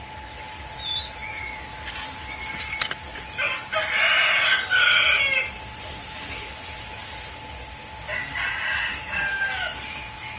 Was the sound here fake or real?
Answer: real